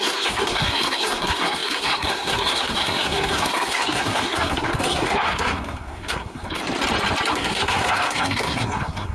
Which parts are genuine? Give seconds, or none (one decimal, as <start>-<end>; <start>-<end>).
6.6-7.3